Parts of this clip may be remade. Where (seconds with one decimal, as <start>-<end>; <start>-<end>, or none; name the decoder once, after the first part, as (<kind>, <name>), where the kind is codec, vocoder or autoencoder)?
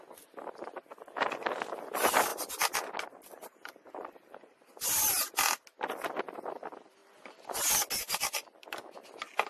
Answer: none